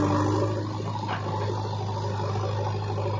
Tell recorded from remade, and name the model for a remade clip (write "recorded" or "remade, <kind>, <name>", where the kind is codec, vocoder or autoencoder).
recorded